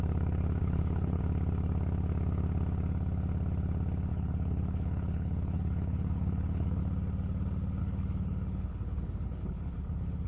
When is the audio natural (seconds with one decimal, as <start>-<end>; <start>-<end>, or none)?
0.0-0.6; 1.2-4.1; 6.8-7.8